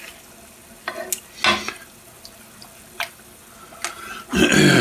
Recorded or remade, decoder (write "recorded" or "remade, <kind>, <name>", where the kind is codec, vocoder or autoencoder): recorded